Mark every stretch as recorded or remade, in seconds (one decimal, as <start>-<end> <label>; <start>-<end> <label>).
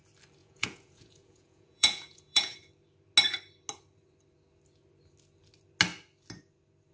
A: 0.0-0.4 recorded; 0.4-2.7 remade; 2.7-6.9 recorded